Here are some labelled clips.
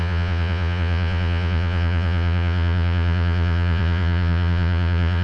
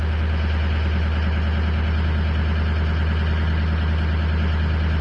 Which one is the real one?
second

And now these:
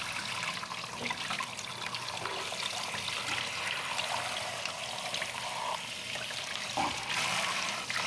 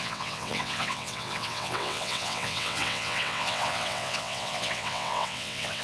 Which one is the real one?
first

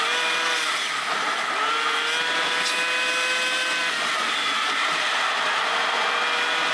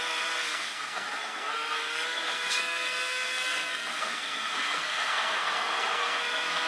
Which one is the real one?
first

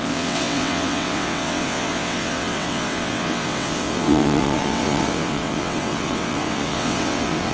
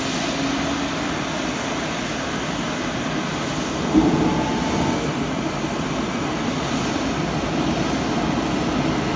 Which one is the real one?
second